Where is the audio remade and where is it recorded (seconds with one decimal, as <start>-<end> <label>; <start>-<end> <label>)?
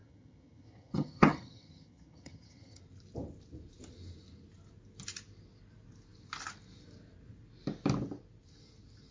0.0-2.8 remade; 2.8-9.1 recorded